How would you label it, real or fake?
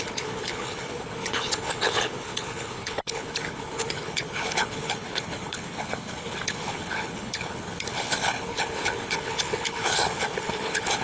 fake